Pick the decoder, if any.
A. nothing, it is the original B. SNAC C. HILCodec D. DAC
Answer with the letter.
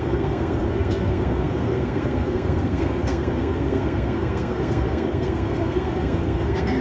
B